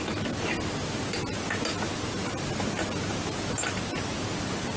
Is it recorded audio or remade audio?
recorded